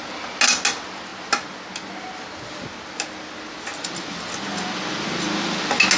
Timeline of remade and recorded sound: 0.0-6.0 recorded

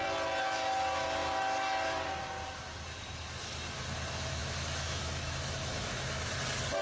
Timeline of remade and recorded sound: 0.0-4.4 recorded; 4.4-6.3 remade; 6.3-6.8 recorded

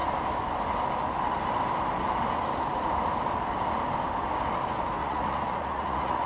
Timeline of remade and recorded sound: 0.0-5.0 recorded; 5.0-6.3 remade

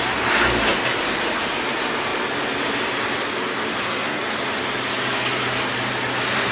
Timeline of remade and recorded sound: 0.0-3.7 recorded; 3.7-4.2 remade; 4.2-6.5 recorded